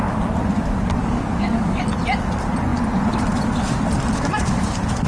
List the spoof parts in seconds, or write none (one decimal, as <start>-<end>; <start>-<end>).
1.0-1.8